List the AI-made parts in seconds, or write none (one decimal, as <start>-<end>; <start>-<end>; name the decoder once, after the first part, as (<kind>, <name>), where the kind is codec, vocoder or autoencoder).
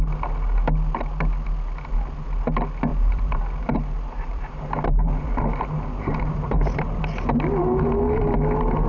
2.9-7.0 (vocoder, BigVGAN v2)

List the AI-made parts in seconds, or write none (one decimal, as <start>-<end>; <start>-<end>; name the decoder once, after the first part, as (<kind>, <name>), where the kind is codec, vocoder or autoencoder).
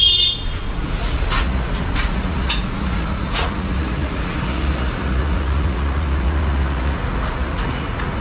0.0-8.2 (vocoder, Vocos)